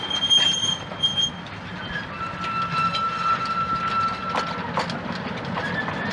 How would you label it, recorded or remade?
recorded